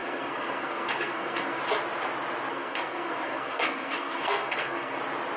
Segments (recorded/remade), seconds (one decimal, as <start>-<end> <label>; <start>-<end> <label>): 0.0-1.6 remade; 1.6-2.5 recorded; 2.5-5.0 remade; 5.0-5.4 recorded